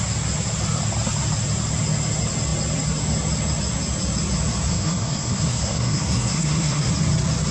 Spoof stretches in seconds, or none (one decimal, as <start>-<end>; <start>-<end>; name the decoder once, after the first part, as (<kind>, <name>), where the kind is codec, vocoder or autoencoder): 4.7-6.9 (codec, SNAC)